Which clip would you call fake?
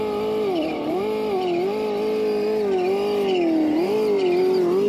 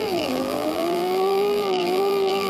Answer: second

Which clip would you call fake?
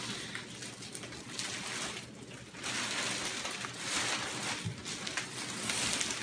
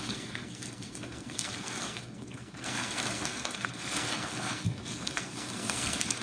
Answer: second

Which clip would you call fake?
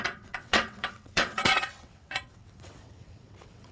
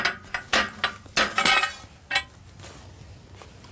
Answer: first